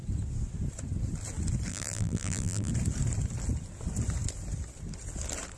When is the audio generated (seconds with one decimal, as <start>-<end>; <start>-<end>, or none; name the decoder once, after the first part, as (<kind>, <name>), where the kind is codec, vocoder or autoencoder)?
1.7-2.7 (vocoder, BigVGAN v2)